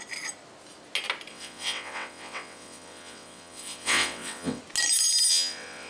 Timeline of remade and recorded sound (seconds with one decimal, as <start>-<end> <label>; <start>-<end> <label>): 0.0-1.3 recorded; 1.3-4.6 remade; 4.6-5.3 recorded; 5.3-5.9 remade